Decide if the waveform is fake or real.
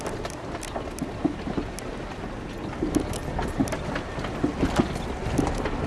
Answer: real